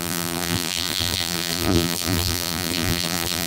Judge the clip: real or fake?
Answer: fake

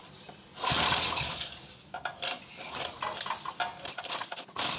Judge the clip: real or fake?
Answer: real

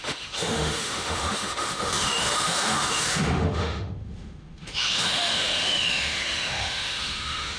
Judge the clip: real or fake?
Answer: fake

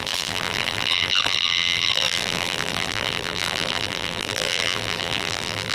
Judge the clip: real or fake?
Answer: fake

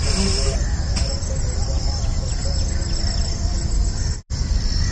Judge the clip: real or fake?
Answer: real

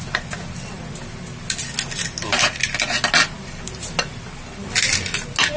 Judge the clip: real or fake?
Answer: real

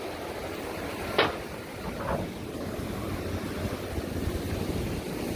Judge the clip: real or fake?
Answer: real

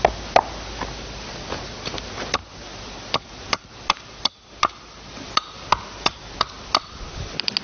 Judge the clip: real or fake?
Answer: real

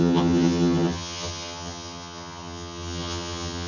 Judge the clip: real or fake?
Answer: fake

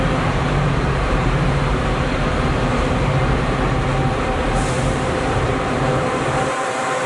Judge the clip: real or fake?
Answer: fake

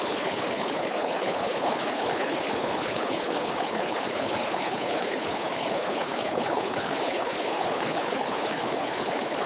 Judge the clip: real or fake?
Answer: fake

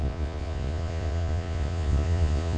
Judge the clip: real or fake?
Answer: fake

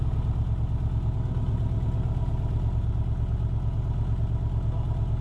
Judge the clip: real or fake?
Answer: real